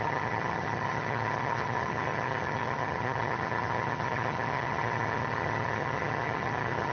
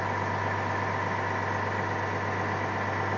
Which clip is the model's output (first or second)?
first